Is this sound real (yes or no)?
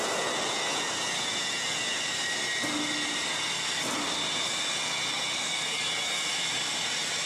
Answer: yes